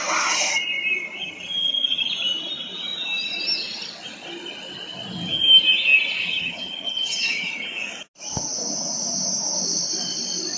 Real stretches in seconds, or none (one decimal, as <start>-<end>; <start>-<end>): 0.0-1.2; 2.1-6.2; 7.9-10.6